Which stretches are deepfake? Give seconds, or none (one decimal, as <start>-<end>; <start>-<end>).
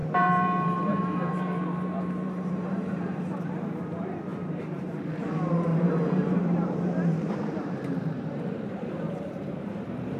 0.0-3.5; 4.3-5.1; 5.7-10.2